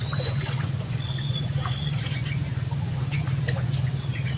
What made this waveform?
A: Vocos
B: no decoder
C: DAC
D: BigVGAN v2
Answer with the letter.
A